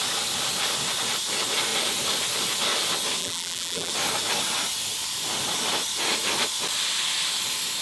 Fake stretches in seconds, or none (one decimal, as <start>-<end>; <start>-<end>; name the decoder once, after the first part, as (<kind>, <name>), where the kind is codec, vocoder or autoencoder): 3.2-3.9 (vocoder, BigVGAN v2)